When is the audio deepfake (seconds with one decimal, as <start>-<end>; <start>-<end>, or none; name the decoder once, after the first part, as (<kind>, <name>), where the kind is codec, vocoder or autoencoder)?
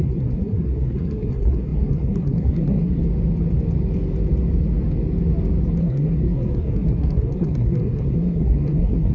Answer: 0.0-3.0 (codec, SNAC); 5.8-9.1